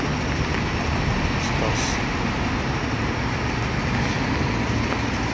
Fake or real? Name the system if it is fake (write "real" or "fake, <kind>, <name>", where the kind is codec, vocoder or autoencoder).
real